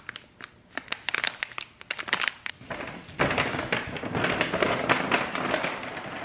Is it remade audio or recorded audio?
recorded